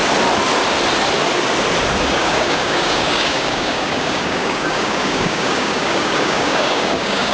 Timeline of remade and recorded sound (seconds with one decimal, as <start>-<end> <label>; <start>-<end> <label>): 0.0-2.0 recorded; 2.0-7.3 remade